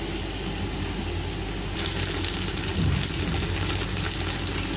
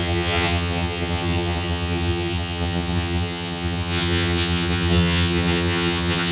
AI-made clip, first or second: second